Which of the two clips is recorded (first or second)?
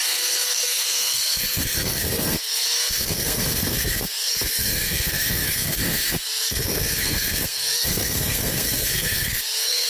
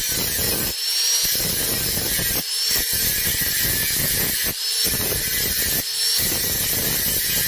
second